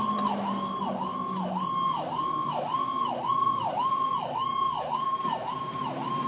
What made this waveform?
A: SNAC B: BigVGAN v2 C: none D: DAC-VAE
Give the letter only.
C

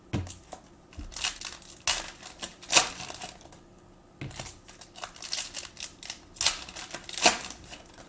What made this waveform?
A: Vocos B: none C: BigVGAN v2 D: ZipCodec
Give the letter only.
B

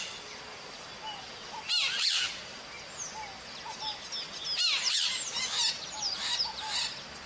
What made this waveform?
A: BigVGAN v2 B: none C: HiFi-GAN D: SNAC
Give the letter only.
B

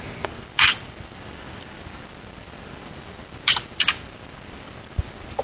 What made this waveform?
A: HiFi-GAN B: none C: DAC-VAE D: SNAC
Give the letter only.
B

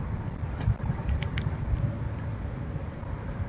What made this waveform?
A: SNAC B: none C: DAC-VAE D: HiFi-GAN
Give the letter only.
B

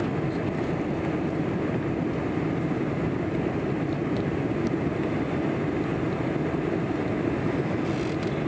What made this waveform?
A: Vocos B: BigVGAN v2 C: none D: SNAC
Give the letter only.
B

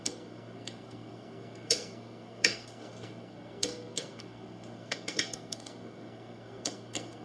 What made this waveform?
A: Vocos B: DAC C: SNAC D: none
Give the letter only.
C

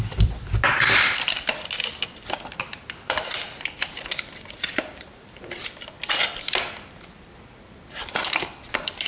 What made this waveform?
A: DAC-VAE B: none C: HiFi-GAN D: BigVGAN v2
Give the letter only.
D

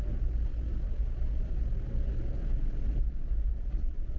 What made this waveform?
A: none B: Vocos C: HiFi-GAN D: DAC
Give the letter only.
A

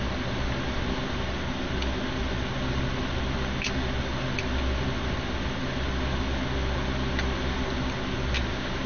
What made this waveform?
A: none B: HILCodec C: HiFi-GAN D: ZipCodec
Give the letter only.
A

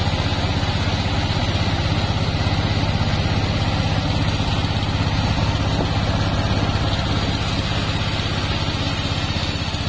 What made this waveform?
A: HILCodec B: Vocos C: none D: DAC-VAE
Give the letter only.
C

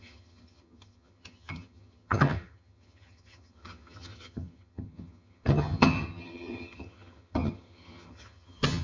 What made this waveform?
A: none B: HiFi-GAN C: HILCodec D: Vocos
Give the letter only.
B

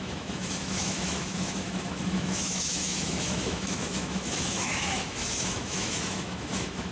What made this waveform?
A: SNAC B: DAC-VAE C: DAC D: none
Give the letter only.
B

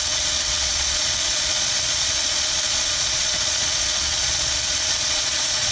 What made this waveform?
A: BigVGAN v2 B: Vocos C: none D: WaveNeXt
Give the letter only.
B